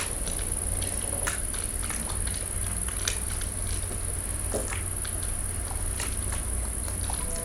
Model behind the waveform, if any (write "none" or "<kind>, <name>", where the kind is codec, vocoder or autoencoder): none